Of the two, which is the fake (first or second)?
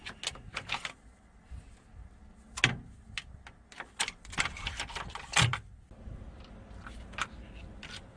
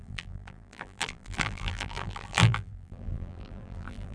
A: second